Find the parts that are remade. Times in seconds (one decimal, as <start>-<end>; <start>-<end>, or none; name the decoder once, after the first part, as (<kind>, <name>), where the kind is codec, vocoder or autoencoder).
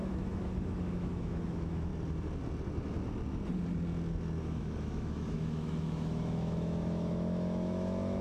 0.0-1.9 (autoencoder, DAC-VAE); 4.4-8.2